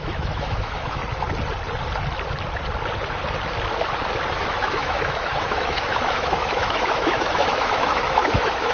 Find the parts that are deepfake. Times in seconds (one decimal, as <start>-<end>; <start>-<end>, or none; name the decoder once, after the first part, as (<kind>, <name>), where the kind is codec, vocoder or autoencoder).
0.0-1.0 (autoencoder, DAC-VAE); 4.3-8.7